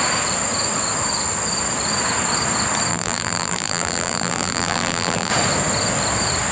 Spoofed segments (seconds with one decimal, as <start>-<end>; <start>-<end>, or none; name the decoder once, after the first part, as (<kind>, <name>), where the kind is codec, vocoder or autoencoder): 2.9-5.3 (vocoder, BigVGAN v2)